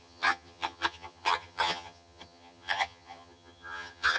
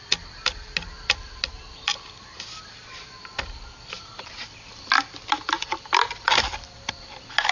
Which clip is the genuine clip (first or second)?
second